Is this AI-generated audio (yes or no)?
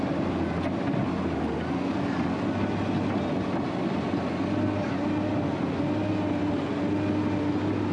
no